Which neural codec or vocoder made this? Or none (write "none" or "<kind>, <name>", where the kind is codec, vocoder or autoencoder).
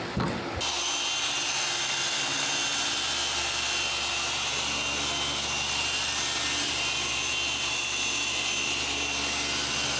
none